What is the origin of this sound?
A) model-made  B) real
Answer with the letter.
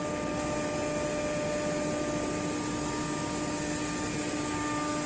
B